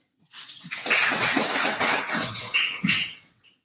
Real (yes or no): no